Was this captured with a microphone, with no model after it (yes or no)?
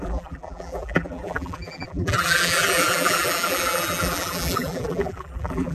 no